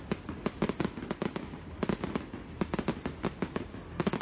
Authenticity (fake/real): real